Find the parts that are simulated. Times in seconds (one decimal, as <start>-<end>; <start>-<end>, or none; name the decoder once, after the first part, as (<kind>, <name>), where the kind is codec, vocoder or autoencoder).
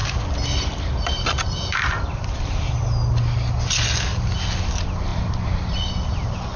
0.0-2.7 (vocoder, BigVGAN v2)